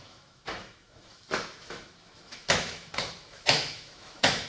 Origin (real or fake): fake